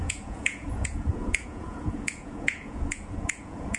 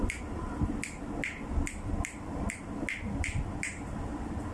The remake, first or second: first